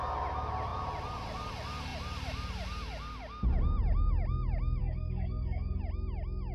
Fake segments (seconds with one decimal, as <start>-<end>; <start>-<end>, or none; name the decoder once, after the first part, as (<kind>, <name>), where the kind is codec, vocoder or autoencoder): 4.8-5.8 (codec, SNAC)